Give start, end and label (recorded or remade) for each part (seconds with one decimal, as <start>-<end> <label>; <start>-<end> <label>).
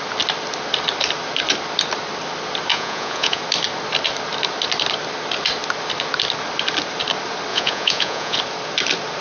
0.0-2.7 recorded; 2.7-3.4 remade; 3.4-7.5 recorded; 7.5-8.4 remade; 8.4-9.2 recorded